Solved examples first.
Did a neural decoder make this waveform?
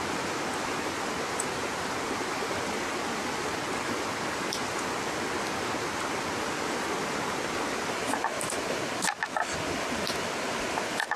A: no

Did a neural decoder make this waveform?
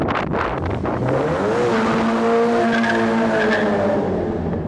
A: no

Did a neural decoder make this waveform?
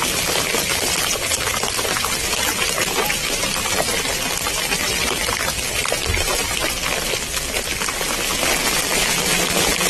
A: yes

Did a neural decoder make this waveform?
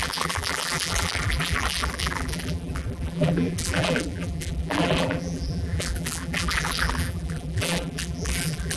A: yes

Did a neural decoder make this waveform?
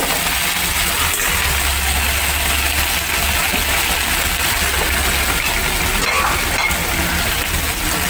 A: no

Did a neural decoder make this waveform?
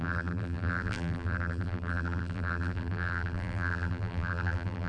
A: yes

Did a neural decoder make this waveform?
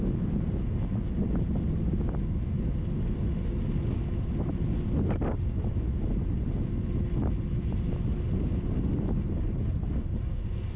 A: no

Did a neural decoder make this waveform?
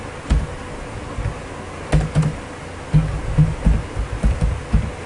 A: no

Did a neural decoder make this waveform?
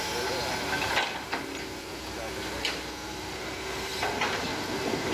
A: no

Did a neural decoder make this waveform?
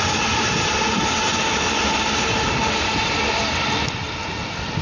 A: no